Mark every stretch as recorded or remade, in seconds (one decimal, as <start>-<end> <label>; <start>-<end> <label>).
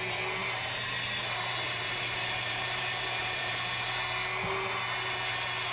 0.0-0.4 recorded; 0.4-3.5 remade; 3.5-5.7 recorded